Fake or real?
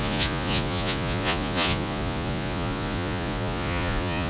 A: fake